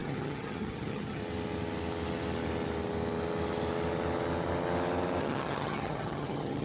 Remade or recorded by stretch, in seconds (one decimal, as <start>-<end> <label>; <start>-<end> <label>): 0.0-1.2 remade; 1.2-5.2 recorded; 5.2-6.6 remade